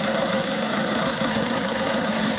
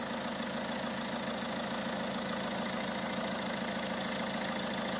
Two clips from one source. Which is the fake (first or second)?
first